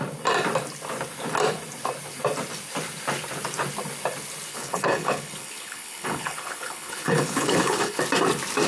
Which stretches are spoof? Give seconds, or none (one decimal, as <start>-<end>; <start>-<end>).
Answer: 4.5-8.0